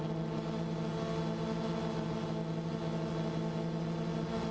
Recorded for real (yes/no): yes